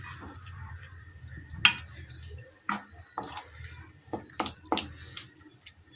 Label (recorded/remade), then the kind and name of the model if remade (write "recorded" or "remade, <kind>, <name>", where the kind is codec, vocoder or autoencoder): recorded